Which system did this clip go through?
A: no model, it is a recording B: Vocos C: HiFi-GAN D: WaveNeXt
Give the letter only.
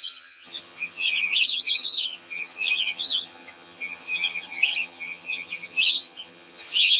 C